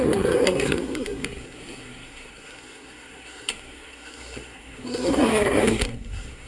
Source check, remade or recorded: remade